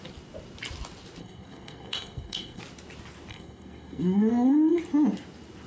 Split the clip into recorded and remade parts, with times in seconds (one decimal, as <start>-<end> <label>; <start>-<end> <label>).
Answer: 0.0-1.2 recorded; 1.2-2.6 remade; 2.6-3.3 recorded; 3.3-4.8 remade; 4.8-5.7 recorded